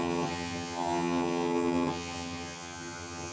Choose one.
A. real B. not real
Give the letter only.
B